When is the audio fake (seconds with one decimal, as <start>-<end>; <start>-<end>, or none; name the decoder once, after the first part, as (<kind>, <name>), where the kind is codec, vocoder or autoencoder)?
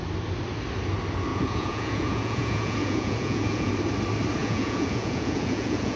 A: 1.3-3.7 (vocoder, Vocos); 4.4-6.0